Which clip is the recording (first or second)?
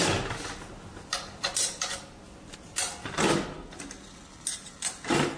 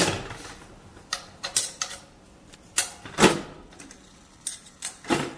first